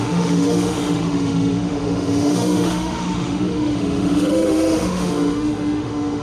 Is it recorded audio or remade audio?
remade